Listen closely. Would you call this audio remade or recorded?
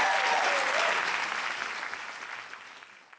recorded